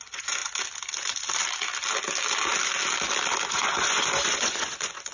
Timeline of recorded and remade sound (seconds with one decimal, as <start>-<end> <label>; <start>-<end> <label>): 0.0-0.4 remade; 0.4-3.5 recorded; 3.5-5.1 remade